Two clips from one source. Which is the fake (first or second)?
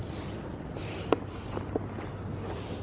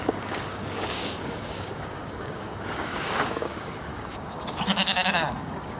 second